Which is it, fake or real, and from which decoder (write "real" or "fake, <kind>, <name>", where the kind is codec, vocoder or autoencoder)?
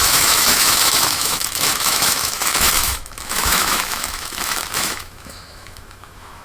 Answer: fake, autoencoder, DAC-VAE